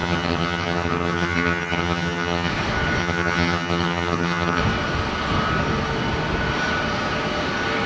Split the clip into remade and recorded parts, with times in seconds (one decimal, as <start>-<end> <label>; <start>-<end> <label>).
0.0-2.5 remade; 2.5-3.0 recorded; 3.0-4.6 remade; 4.6-7.9 recorded